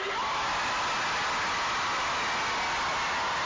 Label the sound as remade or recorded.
recorded